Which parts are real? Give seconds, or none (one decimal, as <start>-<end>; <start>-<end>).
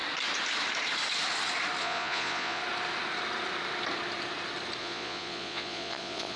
0.0-1.8; 2.6-4.8